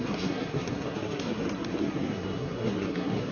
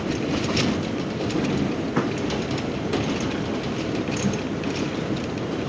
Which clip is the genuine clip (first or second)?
second